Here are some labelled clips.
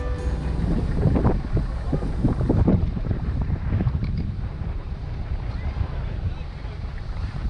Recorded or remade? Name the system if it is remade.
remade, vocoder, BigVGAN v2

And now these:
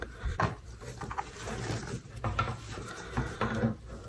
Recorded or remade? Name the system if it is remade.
remade, vocoder, BigVGAN v2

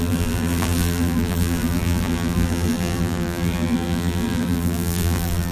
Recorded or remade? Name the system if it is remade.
remade, vocoder, BigVGAN v2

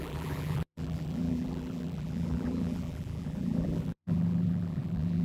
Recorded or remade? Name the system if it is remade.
remade, vocoder, BigVGAN v2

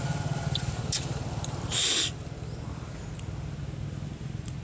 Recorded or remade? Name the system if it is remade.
recorded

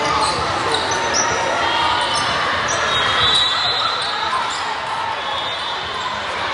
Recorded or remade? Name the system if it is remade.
recorded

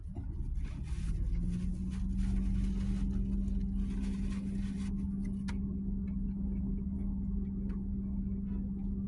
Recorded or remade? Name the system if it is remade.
recorded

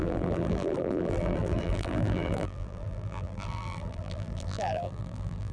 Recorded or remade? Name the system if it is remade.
remade, vocoder, BigVGAN v2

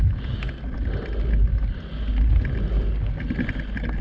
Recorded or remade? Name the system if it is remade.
recorded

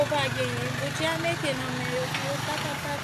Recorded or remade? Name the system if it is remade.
recorded